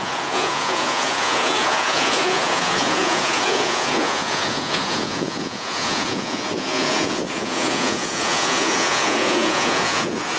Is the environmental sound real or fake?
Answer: fake